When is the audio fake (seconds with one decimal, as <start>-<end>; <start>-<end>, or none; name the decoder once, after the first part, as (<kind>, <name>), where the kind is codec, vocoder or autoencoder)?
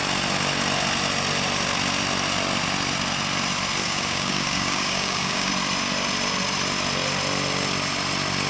3.8-5.5 (codec, DAC)